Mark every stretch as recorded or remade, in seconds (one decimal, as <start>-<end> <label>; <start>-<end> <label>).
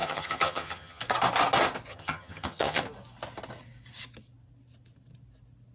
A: 0.0-1.0 remade; 1.0-1.9 recorded; 1.9-2.8 remade; 2.8-5.7 recorded